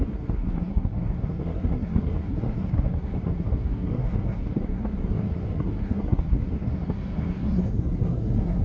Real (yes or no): no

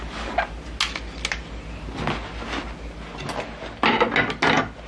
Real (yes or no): yes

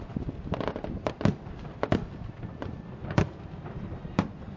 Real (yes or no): yes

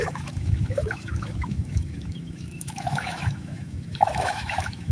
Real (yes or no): no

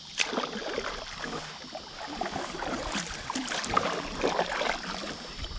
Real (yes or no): yes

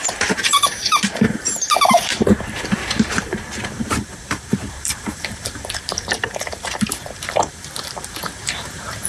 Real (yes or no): no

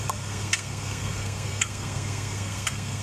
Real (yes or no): no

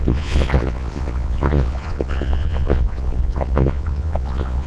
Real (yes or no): no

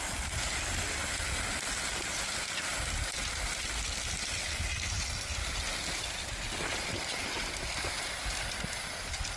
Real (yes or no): yes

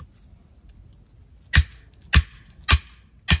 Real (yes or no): yes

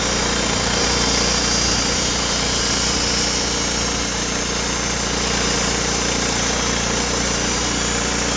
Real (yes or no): yes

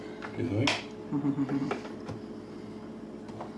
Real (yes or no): yes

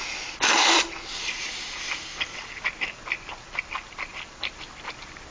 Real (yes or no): yes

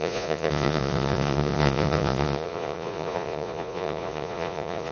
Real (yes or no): no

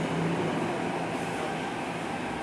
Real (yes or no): yes